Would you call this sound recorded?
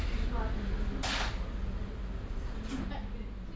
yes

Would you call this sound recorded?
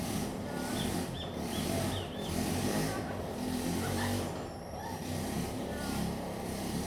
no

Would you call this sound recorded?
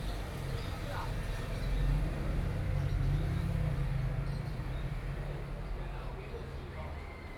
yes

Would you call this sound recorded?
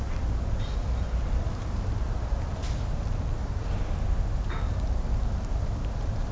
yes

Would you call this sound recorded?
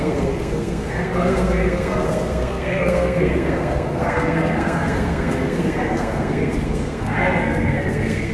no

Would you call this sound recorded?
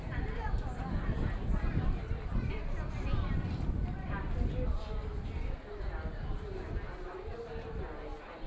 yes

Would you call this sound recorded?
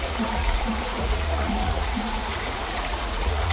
no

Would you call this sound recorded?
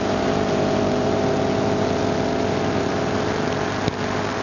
yes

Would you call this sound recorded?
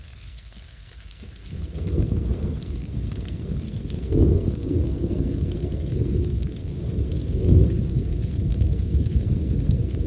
no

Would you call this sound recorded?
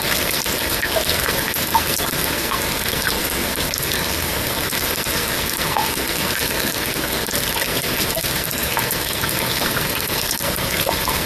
no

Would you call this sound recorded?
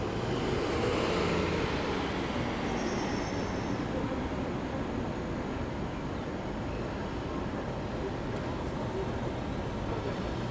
yes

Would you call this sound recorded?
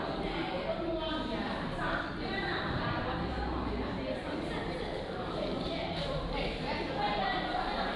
no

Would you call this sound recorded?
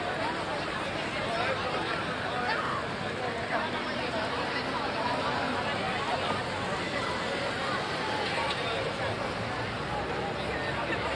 yes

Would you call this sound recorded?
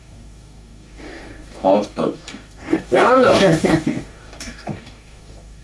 no